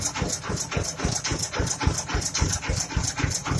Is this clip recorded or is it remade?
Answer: remade